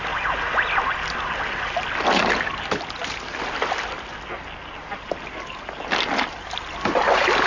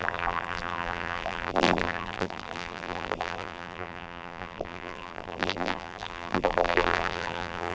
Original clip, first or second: first